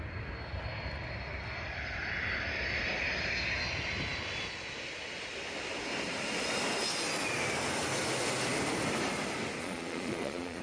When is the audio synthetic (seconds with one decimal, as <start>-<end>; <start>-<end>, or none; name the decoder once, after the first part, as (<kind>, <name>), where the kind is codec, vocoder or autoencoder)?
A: 9.6-10.6 (vocoder, Vocos)